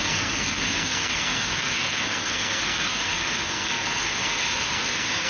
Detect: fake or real fake